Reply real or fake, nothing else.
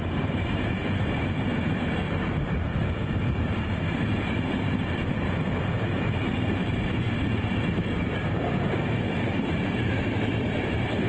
fake